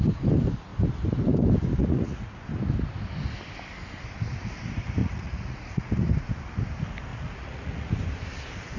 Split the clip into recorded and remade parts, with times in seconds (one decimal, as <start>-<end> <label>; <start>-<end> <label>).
0.0-1.8 recorded; 1.8-2.4 remade; 2.4-5.0 recorded; 5.0-5.9 remade; 5.9-7.1 recorded; 7.1-7.9 remade; 7.9-8.8 recorded